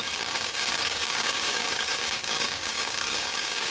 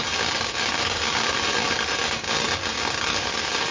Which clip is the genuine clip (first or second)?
second